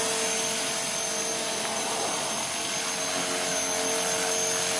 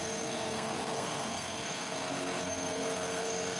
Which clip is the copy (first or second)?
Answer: second